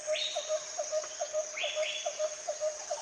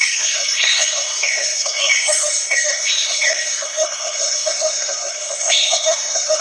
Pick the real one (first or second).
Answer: first